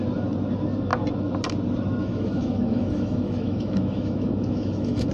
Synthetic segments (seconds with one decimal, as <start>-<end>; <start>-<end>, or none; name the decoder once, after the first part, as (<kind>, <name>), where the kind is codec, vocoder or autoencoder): 2.0-5.1 (autoencoder, DAC-VAE)